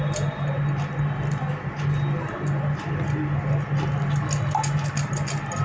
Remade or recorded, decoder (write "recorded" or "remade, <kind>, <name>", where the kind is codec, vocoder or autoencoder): recorded